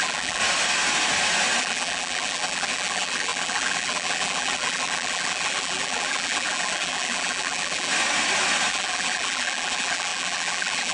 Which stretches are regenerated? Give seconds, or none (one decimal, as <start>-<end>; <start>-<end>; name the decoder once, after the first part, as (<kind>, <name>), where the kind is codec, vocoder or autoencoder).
0.0-0.4 (vocoder, BigVGAN v2); 1.6-7.9; 8.7-10.9